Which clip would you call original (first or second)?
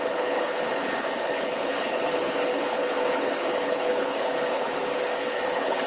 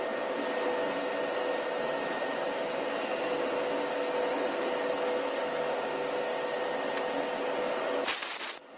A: second